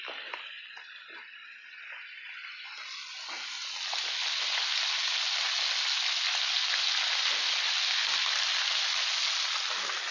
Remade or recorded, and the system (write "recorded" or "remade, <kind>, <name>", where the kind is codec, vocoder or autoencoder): recorded